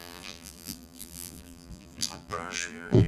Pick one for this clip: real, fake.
fake